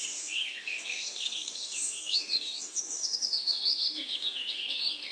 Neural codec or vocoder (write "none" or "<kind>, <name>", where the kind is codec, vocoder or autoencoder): codec, DAC